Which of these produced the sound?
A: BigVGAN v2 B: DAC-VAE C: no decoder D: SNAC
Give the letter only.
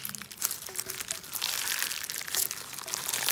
A